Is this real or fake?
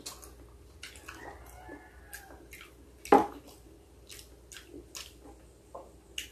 real